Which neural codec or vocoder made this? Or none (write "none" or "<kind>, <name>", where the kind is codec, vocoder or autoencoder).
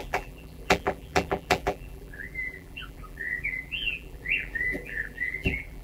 vocoder, BigVGAN v2